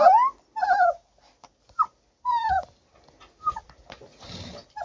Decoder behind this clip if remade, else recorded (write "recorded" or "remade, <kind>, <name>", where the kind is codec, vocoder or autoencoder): recorded